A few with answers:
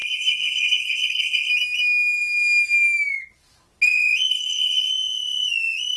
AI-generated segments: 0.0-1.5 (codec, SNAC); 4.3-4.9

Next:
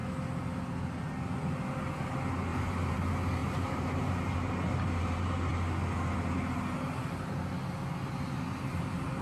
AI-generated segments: 2.5-3.0 (vocoder, BigVGAN v2); 3.4-4.5

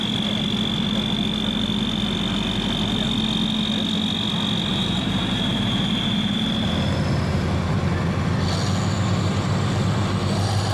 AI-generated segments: 4.7-7.8 (vocoder, BigVGAN v2)